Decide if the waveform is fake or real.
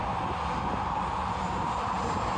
real